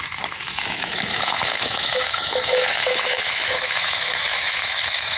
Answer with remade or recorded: remade